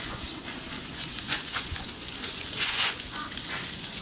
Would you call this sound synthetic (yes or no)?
yes